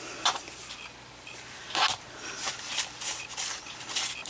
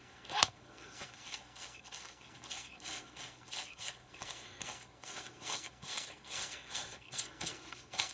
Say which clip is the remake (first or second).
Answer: second